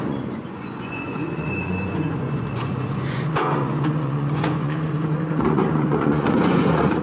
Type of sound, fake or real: fake